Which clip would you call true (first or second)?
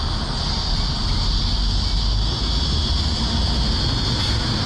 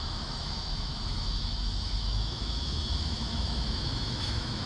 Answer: first